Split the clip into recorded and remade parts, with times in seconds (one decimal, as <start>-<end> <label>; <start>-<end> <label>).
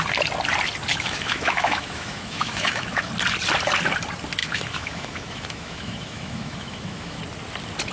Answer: 0.0-0.9 recorded; 0.9-3.1 remade; 3.1-4.4 recorded; 4.4-7.2 remade; 7.2-7.9 recorded